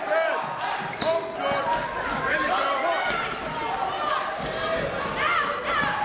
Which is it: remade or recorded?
recorded